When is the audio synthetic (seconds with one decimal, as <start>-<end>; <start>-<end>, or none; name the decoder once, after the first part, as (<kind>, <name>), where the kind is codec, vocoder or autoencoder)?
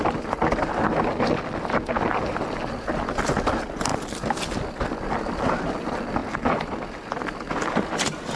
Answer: 3.9-5.7 (vocoder, BigVGAN v2); 6.2-7.6